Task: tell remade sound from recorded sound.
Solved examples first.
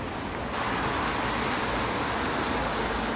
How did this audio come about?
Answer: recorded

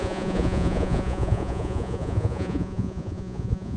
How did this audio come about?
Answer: remade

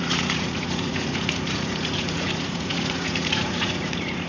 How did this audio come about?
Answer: remade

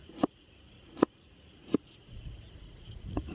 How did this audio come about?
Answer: remade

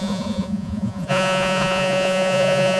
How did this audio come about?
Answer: remade